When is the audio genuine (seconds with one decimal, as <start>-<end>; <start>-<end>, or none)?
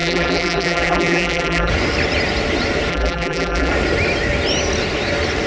1.7-2.9; 3.7-5.5